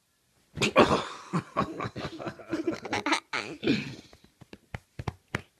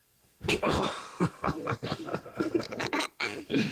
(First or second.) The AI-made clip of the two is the second